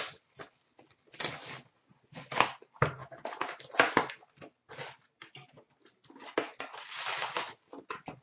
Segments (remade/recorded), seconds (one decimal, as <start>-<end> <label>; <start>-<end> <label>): 0.0-8.2 recorded